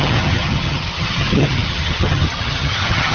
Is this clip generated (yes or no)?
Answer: yes